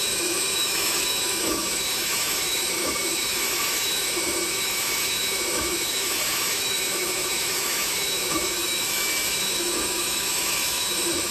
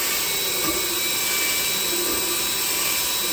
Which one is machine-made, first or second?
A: first